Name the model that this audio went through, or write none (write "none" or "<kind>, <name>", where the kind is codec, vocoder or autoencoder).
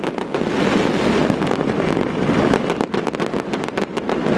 none